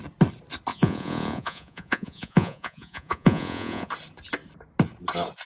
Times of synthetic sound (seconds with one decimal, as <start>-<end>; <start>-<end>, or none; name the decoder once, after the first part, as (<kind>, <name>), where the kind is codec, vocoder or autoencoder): 0.7-3.9 (vocoder, Vocos)